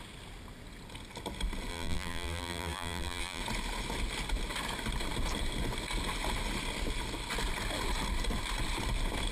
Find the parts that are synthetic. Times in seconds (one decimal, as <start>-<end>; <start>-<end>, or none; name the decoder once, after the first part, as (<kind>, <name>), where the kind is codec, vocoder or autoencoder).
1.7-3.4 (vocoder, BigVGAN v2)